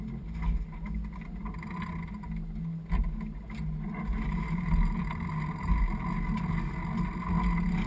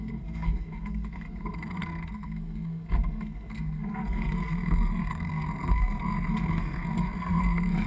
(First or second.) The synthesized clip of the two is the second